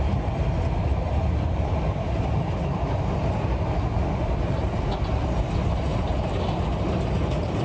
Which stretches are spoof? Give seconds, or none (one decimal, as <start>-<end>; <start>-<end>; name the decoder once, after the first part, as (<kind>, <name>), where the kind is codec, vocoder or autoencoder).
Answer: none